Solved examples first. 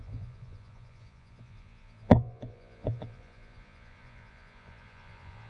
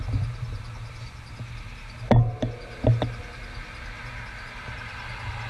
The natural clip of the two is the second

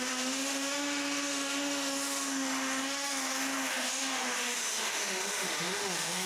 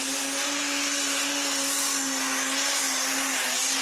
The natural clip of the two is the second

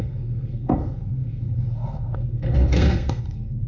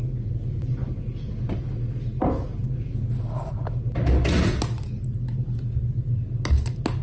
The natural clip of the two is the second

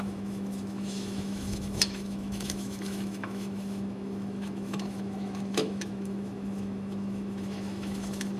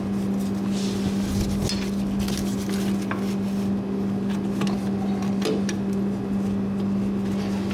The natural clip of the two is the second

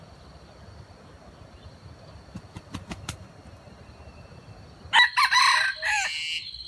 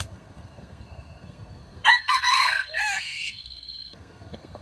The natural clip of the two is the first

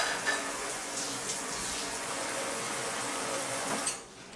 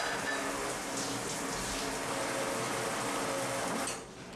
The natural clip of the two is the second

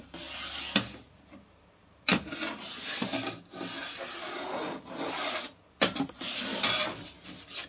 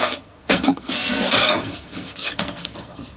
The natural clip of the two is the first